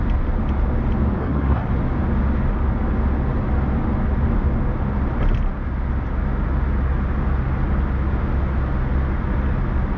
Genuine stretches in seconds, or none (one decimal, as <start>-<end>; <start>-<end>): 0.0-1.2; 1.7-10.0